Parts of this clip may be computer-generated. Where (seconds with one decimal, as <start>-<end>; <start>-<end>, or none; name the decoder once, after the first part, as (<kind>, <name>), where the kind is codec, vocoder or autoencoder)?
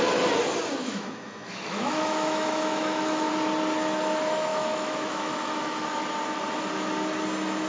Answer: 0.8-3.3 (autoencoder, DAC-VAE); 4.5-5.8